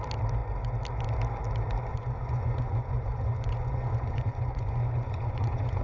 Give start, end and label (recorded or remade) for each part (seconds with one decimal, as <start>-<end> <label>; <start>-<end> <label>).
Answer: 0.0-1.9 recorded; 1.9-5.8 remade